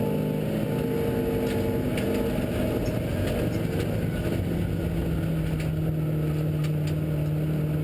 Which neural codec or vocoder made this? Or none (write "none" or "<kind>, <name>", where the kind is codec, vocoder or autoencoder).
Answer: none